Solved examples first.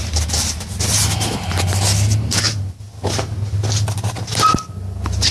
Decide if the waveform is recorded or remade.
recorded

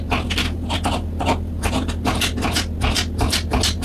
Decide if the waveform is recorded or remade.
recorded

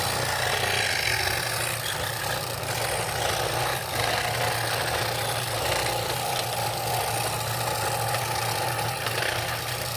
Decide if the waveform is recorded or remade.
recorded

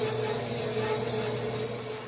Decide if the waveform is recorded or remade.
recorded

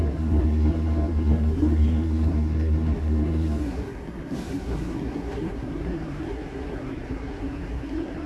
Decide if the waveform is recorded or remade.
remade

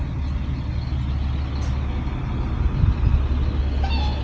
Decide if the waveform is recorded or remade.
recorded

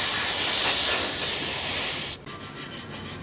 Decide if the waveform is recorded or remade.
recorded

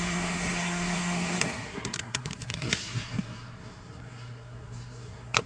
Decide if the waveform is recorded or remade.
remade